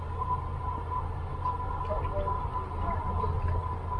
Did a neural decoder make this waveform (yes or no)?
no